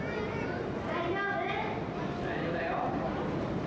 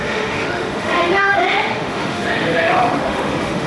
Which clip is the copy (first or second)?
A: second